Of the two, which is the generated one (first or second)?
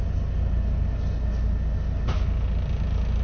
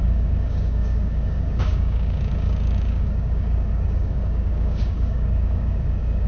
second